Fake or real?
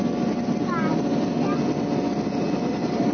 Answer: real